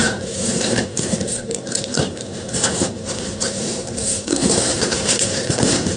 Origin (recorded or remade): remade